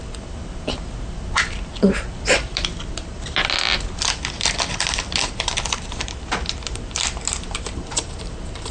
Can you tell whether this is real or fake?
fake